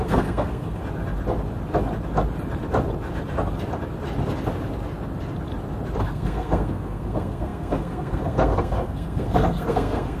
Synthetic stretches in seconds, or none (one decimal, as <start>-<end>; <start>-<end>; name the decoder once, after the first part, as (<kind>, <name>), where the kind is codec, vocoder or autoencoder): 0.0-0.8 (codec, SNAC); 6.0-10.2